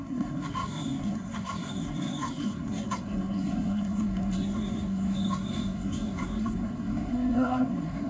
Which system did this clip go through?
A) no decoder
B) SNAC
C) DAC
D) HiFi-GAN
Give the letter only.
B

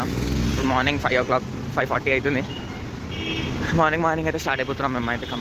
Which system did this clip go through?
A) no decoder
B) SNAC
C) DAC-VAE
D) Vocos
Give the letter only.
A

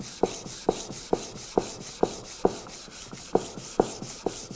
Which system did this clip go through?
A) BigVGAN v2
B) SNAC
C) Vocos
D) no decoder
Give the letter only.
D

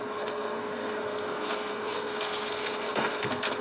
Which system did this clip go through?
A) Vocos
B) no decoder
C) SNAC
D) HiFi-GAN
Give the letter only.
C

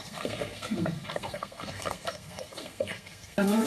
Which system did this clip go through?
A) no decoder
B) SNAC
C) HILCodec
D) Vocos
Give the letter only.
B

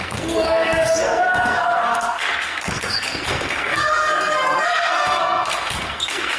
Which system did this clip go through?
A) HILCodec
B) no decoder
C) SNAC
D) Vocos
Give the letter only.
C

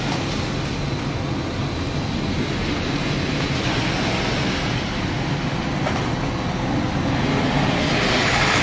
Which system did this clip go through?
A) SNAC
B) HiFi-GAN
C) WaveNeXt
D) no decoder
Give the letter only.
D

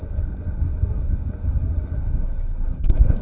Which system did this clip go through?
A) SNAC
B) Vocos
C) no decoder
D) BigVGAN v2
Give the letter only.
A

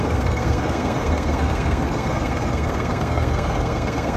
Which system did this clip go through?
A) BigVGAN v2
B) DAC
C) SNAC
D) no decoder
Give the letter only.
C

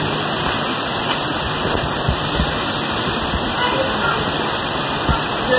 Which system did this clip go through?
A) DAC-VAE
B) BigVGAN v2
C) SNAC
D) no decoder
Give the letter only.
D